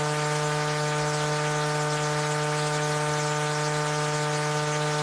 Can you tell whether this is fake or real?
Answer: real